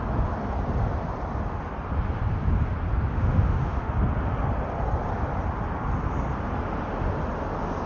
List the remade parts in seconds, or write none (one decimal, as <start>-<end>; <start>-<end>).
3.1-3.9